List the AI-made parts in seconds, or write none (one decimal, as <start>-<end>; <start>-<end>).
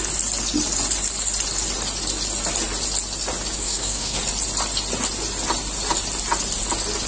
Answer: 3.6-4.2